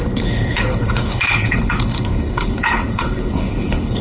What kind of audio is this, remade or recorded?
remade